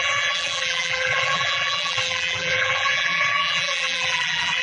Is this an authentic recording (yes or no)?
no